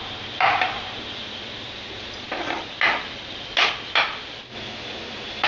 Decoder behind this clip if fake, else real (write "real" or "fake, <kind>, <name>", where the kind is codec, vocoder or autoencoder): real